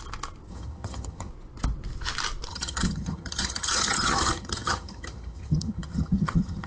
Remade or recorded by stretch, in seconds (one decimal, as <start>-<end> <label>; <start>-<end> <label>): 0.0-0.5 recorded; 0.5-1.3 remade; 1.3-2.5 recorded; 2.5-6.7 remade